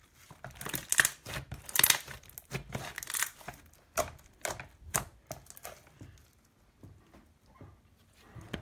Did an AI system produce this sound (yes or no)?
no